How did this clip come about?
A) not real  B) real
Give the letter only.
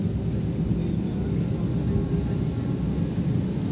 B